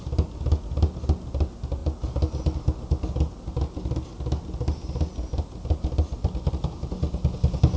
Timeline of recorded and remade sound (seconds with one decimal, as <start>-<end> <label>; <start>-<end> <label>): 0.0-7.8 recorded

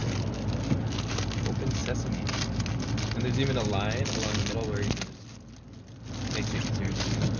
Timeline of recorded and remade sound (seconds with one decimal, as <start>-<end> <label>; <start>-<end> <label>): 0.0-7.4 recorded